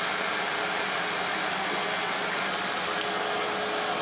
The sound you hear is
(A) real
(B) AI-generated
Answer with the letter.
A